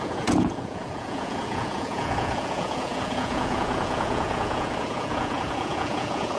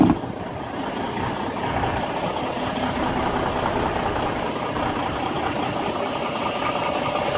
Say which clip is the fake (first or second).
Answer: first